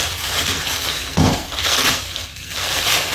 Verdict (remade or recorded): remade